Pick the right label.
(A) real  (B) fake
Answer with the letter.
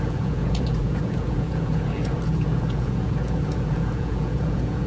B